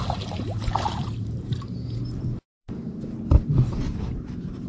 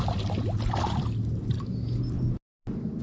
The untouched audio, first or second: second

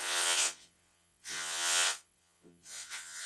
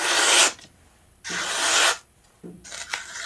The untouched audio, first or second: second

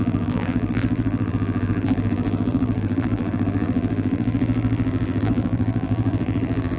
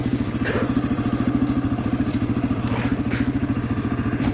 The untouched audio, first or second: second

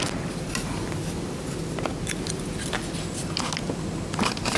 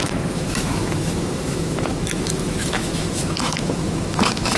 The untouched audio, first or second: first